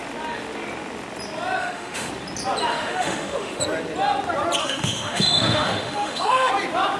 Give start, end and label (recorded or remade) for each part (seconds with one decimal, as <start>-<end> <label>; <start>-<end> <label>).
0.0-1.6 recorded; 1.6-2.1 remade; 2.1-2.7 recorded; 2.7-3.6 remade; 3.6-4.6 recorded; 4.6-6.5 remade; 6.5-7.0 recorded